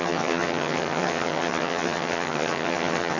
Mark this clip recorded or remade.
remade